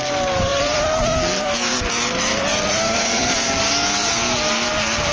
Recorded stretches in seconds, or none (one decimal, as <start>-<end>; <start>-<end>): 0.0-0.5; 3.6-5.1